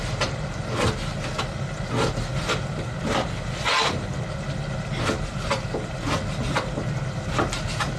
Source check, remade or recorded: recorded